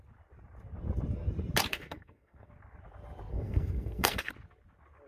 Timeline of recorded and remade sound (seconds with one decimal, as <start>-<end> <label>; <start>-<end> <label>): 0.0-1.7 recorded; 1.7-2.5 remade; 2.5-3.3 recorded; 3.3-4.3 remade; 4.3-5.1 recorded